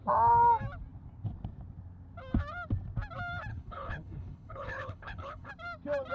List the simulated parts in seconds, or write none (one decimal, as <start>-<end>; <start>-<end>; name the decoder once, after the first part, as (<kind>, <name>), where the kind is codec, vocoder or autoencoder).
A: 3.5-5.5 (codec, HILCodec)